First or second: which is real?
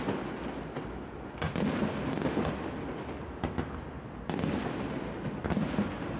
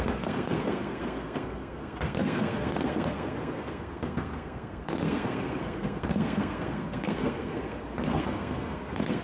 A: first